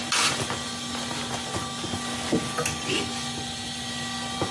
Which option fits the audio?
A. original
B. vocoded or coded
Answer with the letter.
A